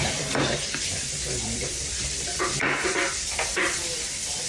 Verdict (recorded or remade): remade